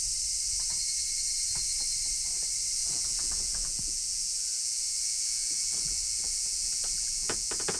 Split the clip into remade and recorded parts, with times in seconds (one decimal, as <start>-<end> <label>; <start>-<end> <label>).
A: 0.0-2.8 recorded; 2.8-7.8 remade

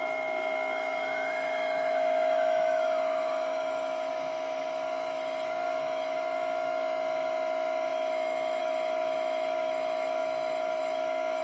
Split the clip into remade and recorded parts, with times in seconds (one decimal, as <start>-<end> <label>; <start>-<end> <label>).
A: 0.0-11.4 remade

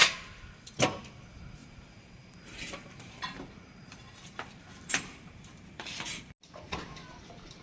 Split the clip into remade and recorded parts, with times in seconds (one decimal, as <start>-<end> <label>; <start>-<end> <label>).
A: 0.0-1.6 recorded; 1.6-6.2 remade; 6.2-7.6 recorded

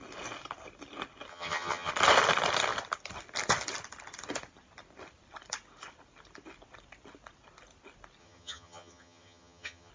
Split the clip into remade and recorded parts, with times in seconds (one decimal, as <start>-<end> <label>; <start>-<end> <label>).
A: 0.0-1.3 recorded; 1.3-1.9 remade; 1.9-8.2 recorded; 8.2-9.9 remade

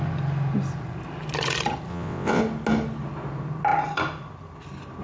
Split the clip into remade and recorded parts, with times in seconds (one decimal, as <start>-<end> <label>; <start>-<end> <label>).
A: 0.0-1.9 recorded; 1.9-2.4 remade; 2.4-5.0 recorded

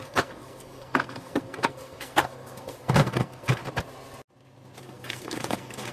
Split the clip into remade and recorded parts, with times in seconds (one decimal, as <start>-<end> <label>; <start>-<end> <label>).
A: 0.0-3.6 remade; 3.6-4.8 recorded; 4.8-5.9 remade